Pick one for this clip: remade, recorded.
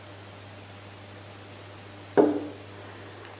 recorded